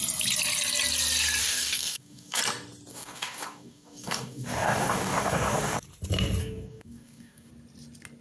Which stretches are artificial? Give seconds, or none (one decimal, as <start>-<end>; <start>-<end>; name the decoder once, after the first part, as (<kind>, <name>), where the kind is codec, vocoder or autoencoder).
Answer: 1.4-2.4 (codec, DAC); 2.9-5.8; 6.4-7.5